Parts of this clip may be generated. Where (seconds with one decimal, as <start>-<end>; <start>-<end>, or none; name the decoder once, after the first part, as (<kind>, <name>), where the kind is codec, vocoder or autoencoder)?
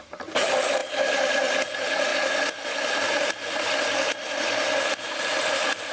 0.0-2.1 (vocoder, BigVGAN v2); 5.5-5.9